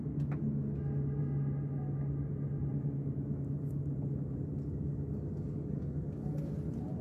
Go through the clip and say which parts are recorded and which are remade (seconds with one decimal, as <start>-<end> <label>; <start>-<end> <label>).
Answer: 0.0-2.6 recorded; 2.6-4.5 remade; 4.5-7.0 recorded